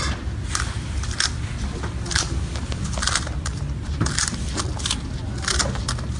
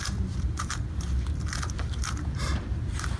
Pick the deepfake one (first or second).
second